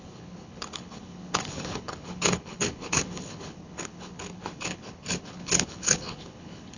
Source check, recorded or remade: remade